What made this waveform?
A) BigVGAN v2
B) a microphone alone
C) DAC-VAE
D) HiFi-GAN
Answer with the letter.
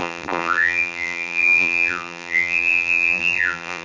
A